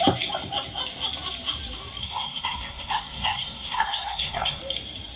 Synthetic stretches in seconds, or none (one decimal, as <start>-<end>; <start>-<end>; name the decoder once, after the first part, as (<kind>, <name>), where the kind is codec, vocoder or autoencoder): 2.0-4.6 (codec, SNAC)